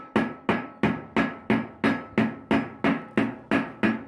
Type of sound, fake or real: real